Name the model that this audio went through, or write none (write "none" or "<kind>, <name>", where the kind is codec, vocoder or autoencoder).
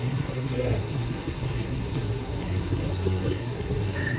codec, SNAC